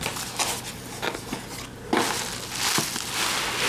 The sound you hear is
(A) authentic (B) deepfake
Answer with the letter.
A